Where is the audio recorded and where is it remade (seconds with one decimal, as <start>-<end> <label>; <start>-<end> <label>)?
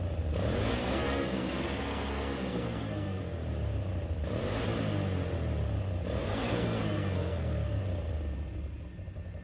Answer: 0.0-0.8 recorded; 0.8-3.2 remade; 3.2-6.2 recorded; 6.2-7.8 remade; 7.8-9.4 recorded